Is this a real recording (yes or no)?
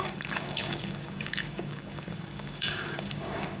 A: no